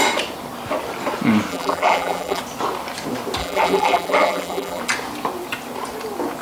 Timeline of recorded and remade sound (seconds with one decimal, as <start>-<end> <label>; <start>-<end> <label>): 0.0-1.5 recorded; 1.5-2.4 remade; 2.4-3.4 recorded; 3.4-4.8 remade; 4.8-6.4 recorded